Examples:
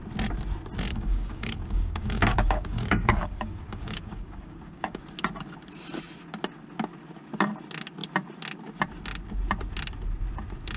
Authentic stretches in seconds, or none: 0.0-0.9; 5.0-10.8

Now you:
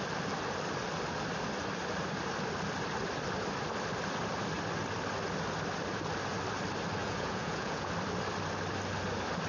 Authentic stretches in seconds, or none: 0.0-7.0; 7.9-9.5

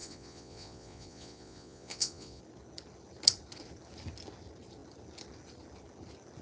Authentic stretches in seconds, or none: 2.4-6.4